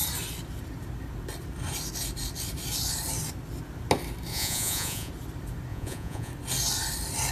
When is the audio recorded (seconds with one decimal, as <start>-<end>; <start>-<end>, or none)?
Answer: 0.0-4.3; 5.1-5.7; 6.3-7.3